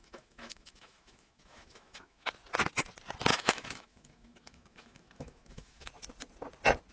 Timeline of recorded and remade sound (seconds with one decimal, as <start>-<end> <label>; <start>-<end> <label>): 0.0-2.3 remade; 2.3-3.3 recorded; 3.3-5.9 remade; 5.9-6.9 recorded